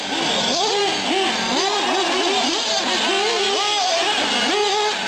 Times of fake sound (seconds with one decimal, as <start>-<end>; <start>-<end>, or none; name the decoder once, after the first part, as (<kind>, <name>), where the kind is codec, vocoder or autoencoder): none